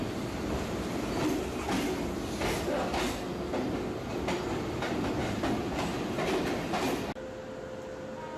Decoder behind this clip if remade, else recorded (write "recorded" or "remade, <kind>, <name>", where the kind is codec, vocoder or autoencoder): recorded